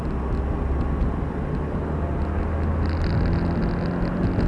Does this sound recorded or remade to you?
recorded